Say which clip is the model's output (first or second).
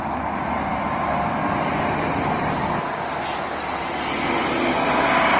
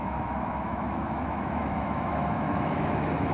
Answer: second